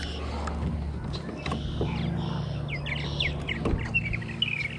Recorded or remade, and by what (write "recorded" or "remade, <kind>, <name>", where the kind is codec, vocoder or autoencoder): recorded